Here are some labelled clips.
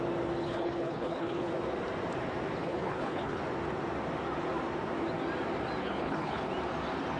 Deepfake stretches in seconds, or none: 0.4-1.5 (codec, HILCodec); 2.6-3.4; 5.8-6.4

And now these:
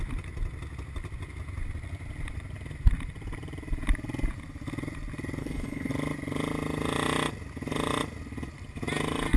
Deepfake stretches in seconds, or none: 5.4-5.9 (codec, HILCodec)

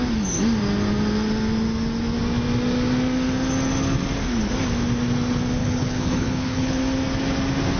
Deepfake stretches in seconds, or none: 5.6-6.8 (codec, HILCodec)

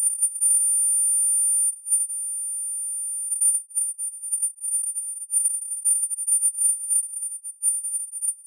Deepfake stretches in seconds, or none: 0.0-0.6 (codec, HILCodec); 1.7-2.1; 3.3-8.5

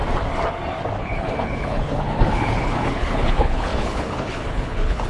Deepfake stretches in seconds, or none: 1.0-5.1 (codec, HILCodec)